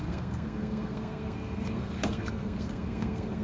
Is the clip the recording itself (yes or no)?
no